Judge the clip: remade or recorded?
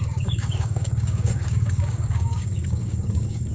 remade